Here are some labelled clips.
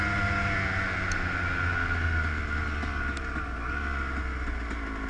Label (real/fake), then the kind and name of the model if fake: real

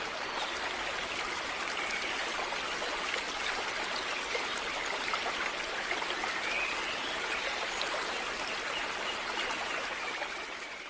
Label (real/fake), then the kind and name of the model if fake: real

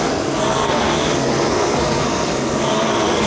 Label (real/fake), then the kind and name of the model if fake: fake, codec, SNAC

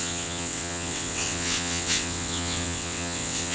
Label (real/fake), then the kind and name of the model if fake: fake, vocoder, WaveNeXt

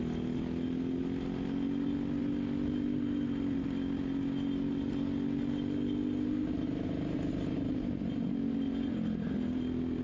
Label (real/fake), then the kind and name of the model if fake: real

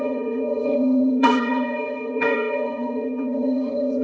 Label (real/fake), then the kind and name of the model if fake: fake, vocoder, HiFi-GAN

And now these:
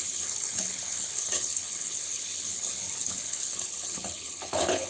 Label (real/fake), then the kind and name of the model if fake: fake, codec, HILCodec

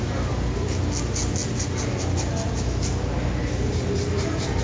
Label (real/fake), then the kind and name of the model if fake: real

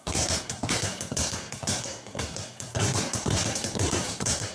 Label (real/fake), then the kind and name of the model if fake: fake, codec, SNAC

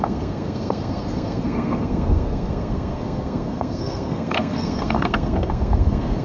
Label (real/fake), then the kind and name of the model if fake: fake, codec, SNAC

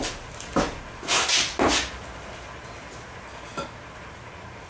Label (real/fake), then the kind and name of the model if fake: real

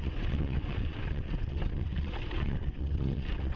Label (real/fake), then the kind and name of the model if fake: fake, vocoder, WaveNeXt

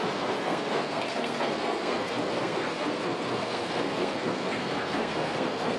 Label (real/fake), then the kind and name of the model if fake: fake, codec, SNAC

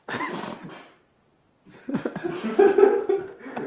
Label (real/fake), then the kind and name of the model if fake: real